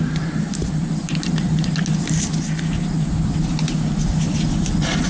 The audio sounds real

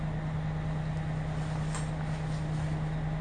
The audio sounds real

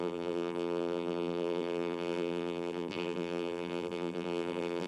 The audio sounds fake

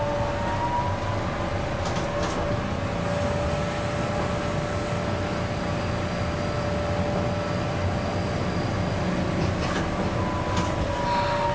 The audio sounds real